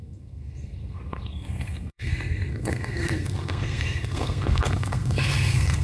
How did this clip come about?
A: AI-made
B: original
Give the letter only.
A